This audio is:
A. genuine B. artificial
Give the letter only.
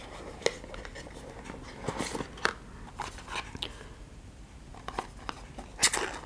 A